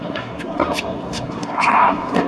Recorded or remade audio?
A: remade